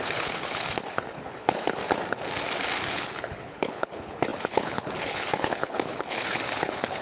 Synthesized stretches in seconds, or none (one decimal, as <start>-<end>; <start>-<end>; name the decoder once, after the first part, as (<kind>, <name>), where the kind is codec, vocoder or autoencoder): 0.0-1.8 (codec, HILCodec); 2.9-7.0